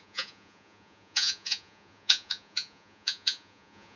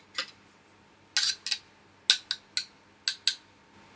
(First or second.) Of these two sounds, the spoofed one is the first